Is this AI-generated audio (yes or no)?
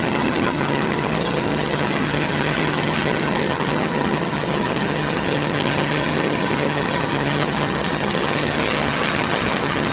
yes